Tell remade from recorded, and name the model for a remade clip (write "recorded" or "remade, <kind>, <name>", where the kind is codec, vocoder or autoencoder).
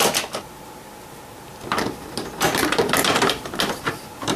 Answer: remade, vocoder, BigVGAN v2